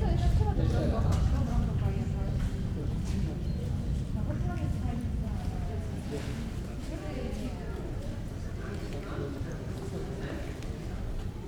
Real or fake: fake